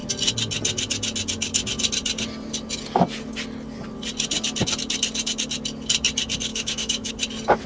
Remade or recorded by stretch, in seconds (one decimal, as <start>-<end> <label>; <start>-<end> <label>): 0.0-6.5 recorded; 6.5-7.1 remade; 7.1-7.7 recorded